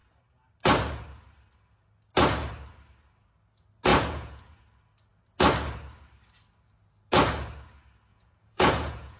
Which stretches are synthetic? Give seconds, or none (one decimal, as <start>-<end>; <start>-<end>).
3.9-4.6; 8.1-9.2